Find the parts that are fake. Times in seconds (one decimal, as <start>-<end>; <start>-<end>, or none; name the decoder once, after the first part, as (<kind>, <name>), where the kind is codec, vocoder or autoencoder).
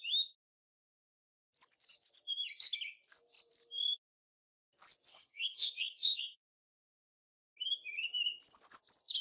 5.1-6.6 (codec, SNAC)